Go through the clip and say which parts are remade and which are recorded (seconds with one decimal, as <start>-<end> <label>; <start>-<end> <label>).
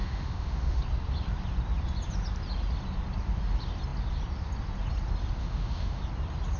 0.0-0.8 remade; 0.8-5.4 recorded; 5.4-6.0 remade; 6.0-6.6 recorded